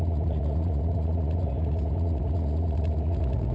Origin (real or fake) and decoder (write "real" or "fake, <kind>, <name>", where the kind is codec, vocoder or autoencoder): fake, vocoder, Vocos